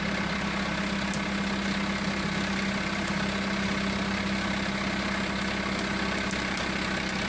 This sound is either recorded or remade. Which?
recorded